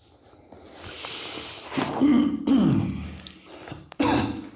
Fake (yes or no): no